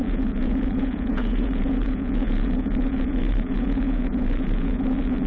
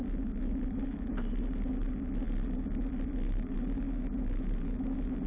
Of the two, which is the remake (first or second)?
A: first